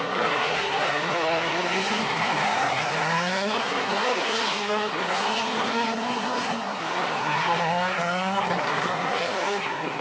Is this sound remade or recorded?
remade